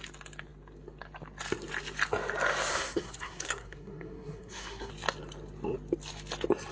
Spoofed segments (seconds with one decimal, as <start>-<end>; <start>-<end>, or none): 2.7-4.9